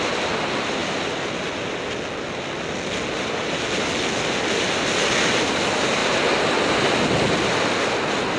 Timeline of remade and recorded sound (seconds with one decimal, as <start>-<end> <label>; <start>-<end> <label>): 0.0-8.4 recorded